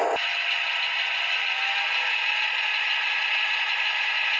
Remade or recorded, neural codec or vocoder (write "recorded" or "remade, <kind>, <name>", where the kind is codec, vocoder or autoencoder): recorded